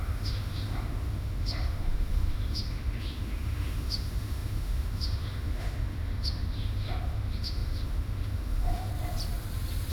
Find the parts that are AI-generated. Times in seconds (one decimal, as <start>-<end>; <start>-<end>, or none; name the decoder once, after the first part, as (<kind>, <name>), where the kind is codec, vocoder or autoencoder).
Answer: 0.0-8.9 (autoencoder, DAC-VAE)